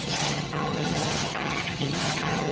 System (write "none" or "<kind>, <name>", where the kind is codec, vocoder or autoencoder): vocoder, HiFi-GAN